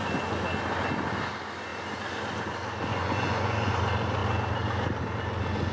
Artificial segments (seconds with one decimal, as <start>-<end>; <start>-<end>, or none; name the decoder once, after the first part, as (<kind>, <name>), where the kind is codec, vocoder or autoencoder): 2.9-3.7 (vocoder, Vocos)